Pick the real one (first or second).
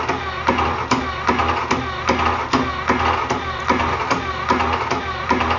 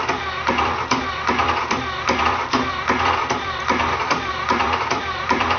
first